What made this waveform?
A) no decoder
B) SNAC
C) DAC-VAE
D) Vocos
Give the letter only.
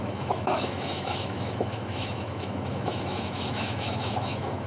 C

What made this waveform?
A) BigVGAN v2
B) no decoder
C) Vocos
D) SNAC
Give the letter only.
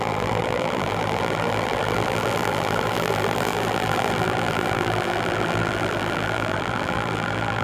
A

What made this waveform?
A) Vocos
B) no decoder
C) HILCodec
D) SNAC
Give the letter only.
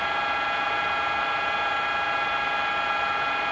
B